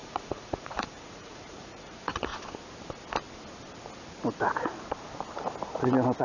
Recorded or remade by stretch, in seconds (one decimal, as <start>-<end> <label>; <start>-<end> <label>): 0.0-2.3 remade; 2.3-6.2 recorded